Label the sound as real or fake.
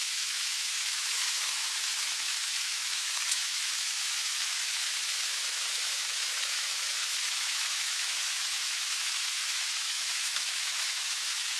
fake